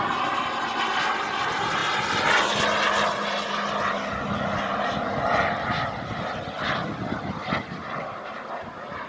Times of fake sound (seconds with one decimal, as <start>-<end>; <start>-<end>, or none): none